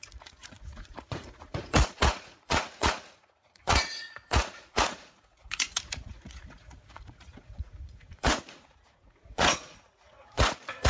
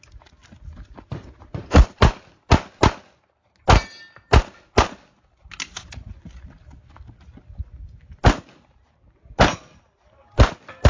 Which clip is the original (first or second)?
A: second